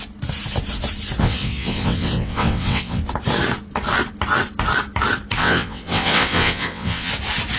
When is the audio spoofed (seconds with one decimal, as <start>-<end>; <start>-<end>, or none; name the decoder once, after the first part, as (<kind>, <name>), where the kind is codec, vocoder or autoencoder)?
1.2-3.0 (vocoder, WaveNeXt); 5.4-7.1